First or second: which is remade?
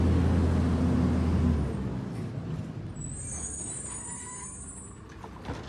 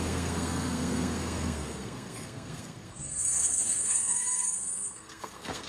second